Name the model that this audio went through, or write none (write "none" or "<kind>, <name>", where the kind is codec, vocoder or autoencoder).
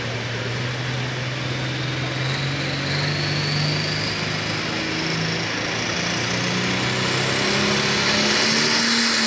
none